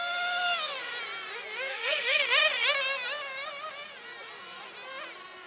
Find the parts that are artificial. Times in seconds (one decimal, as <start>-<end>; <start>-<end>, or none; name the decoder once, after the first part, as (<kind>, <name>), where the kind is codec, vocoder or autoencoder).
1.7-2.2 (codec, SNAC)